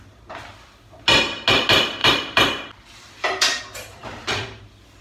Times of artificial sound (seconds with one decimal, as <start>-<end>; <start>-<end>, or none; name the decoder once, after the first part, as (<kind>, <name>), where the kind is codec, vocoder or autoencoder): 2.0-3.6 (vocoder, BigVGAN v2); 4.0-4.6